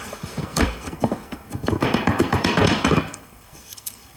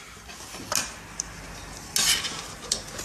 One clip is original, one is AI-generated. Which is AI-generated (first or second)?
first